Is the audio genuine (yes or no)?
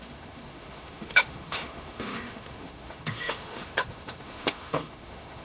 no